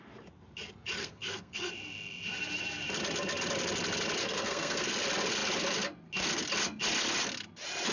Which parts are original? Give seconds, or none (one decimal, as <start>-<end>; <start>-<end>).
0.0-1.0; 1.7-4.2; 4.9-7.9